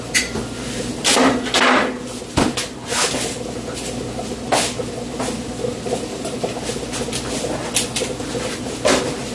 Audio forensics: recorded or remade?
recorded